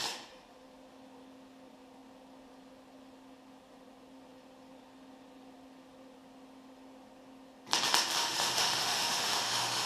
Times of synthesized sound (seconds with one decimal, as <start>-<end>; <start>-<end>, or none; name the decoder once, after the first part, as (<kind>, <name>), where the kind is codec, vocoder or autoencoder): 8.2-9.9 (autoencoder, DAC-VAE)

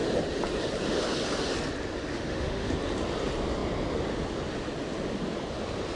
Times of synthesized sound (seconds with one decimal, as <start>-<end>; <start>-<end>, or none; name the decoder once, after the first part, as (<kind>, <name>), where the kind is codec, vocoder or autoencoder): 2.1-2.7 (autoencoder, DAC-VAE)

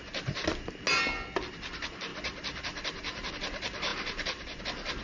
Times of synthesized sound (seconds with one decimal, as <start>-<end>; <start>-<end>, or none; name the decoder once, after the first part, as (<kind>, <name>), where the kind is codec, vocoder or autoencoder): none

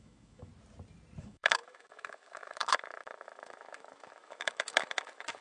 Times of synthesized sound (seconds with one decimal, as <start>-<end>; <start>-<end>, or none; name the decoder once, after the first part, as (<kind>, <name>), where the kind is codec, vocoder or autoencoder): 0.0-0.5 (autoencoder, DAC-VAE); 1.2-5.4

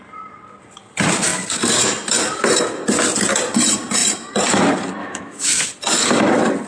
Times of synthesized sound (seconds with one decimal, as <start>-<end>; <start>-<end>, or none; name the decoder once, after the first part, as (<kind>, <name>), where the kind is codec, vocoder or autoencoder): 5.0-5.6 (autoencoder, DAC-VAE)

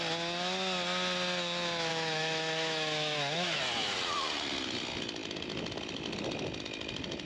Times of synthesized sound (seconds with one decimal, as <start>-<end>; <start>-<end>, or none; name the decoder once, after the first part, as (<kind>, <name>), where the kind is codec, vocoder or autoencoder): 1.9-3.6 (autoencoder, DAC-VAE)

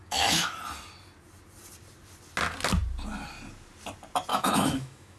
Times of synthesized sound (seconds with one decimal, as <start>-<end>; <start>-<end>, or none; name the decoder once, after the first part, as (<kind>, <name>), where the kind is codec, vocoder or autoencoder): 0.0-0.6 (autoencoder, DAC-VAE); 4.3-5.2

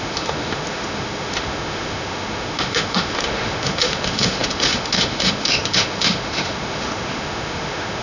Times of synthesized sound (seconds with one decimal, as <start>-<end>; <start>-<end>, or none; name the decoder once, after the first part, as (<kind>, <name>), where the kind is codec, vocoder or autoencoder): 0.0-8.0 (autoencoder, DAC-VAE)